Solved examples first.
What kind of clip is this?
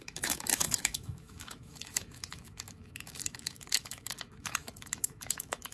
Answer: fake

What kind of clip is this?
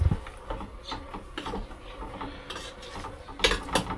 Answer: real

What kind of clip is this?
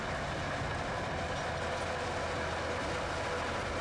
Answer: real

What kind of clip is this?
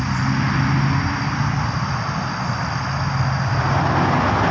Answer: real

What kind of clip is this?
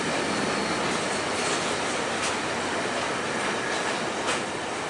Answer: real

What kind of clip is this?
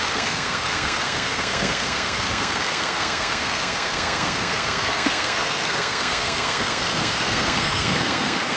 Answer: fake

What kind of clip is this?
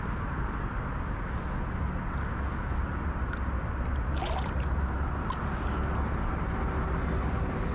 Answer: real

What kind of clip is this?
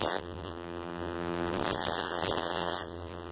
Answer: fake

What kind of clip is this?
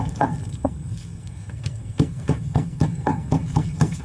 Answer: fake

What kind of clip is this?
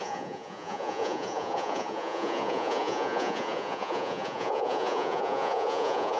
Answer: fake